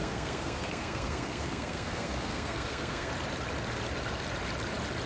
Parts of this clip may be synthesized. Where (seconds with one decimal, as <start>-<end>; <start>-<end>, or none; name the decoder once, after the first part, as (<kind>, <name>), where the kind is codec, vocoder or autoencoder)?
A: 0.0-3.1 (codec, SNAC)